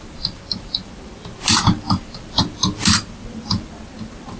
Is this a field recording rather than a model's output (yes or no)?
no